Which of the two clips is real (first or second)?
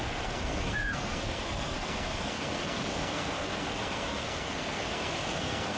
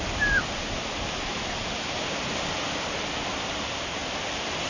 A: second